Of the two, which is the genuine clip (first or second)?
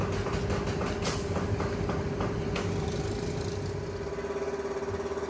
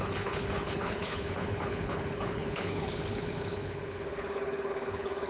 first